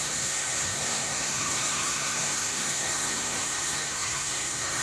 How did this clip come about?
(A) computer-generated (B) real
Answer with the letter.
A